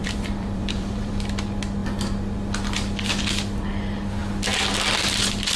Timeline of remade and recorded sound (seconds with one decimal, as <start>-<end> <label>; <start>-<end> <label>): 0.0-1.1 remade; 1.1-5.6 recorded